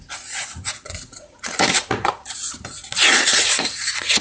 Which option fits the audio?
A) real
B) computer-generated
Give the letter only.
B